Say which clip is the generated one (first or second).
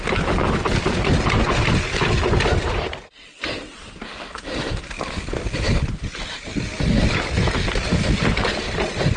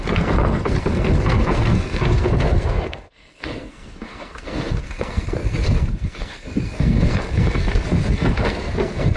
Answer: second